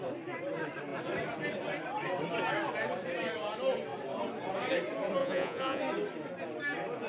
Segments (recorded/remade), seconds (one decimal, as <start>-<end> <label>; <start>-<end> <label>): 0.0-5.2 recorded; 5.2-5.8 remade; 5.8-7.1 recorded